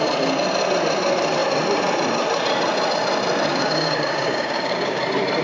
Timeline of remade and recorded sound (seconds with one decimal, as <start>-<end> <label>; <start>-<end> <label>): 0.0-3.5 recorded; 3.5-5.0 remade; 5.0-5.4 recorded